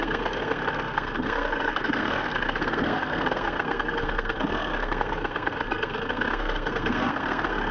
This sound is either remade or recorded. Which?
remade